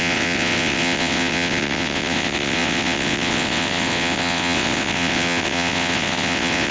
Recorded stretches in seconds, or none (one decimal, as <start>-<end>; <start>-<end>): none